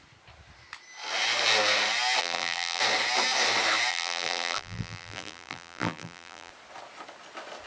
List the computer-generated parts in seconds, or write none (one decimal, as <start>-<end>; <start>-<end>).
2.2-2.8; 3.9-6.5